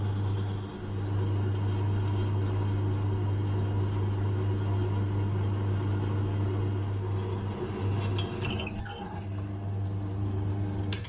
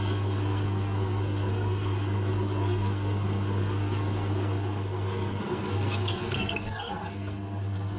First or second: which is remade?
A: second